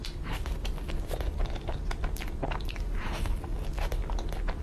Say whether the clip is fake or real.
real